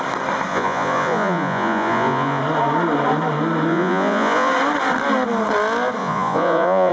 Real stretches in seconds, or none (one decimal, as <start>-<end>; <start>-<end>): 0.0-0.5; 2.4-3.7; 4.5-6.0